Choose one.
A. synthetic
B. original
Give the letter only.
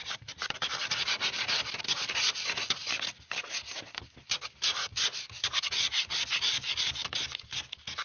B